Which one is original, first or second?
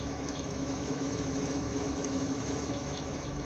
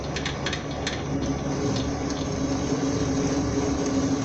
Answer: second